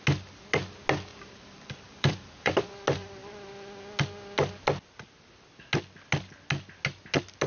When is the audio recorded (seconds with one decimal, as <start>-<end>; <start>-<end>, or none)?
0.0-1.1; 2.6-7.5